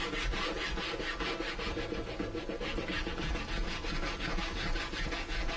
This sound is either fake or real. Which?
real